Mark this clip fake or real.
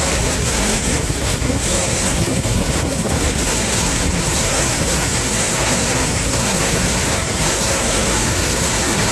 fake